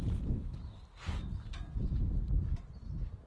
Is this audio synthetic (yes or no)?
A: no